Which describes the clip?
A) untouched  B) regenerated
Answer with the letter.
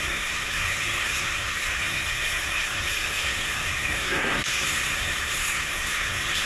B